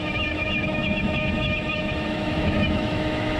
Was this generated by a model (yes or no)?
yes